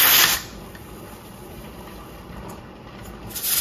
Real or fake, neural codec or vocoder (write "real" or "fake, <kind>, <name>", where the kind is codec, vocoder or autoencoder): real